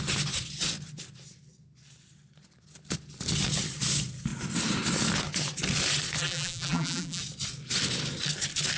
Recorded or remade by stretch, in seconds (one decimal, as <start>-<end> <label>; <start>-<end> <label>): 0.0-6.2 recorded; 6.2-7.2 remade; 7.2-8.8 recorded